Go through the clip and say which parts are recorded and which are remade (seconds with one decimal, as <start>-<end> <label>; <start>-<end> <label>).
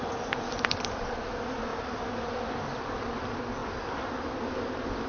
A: 0.0-5.1 recorded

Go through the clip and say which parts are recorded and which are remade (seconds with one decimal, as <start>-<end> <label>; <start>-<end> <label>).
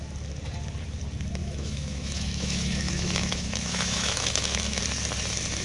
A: 0.0-1.4 recorded; 1.4-4.8 remade; 4.8-5.6 recorded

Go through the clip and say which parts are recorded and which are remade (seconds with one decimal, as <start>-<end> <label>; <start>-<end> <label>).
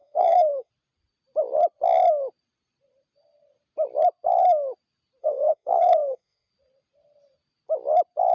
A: 0.0-0.7 remade; 0.7-5.2 recorded; 5.2-6.5 remade; 6.5-8.3 recorded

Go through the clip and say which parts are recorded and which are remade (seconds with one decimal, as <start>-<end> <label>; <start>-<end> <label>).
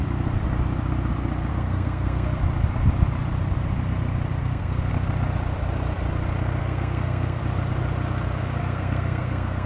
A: 0.0-1.5 recorded; 1.5-2.4 remade; 2.4-4.4 recorded; 4.4-4.9 remade; 4.9-6.6 recorded; 6.6-7.4 remade; 7.4-8.6 recorded; 8.6-9.7 remade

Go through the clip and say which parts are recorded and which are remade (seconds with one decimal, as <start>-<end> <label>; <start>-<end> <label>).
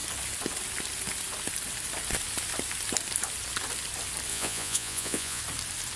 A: 0.0-4.3 recorded; 4.3-5.4 remade; 5.4-6.0 recorded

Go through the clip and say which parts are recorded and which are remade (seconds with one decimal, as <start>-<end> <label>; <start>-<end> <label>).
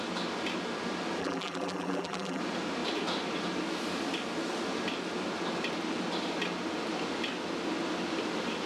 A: 0.0-1.2 recorded; 1.2-2.4 remade; 2.4-8.7 recorded